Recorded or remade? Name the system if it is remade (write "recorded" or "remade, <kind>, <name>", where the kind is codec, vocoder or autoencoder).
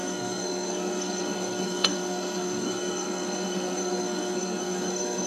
remade, codec, SNAC